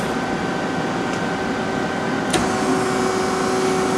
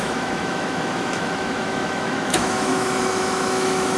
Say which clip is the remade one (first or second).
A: second